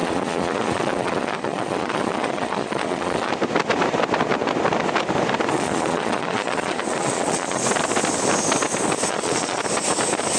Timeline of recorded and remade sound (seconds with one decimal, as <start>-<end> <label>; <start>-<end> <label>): 0.0-3.3 remade; 3.3-5.5 recorded; 5.5-7.6 remade; 7.6-9.1 recorded; 9.1-9.6 remade; 9.6-10.4 recorded